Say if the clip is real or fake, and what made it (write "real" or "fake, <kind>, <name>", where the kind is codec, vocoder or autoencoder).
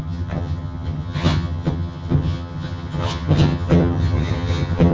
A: fake, vocoder, HiFi-GAN